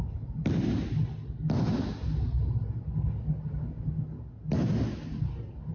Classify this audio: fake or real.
real